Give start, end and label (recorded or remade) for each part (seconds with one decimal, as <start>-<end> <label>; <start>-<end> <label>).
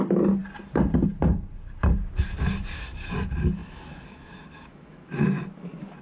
0.0-3.6 recorded; 3.6-5.4 remade; 5.4-6.0 recorded